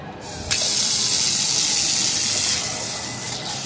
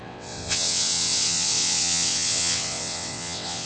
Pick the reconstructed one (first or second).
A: second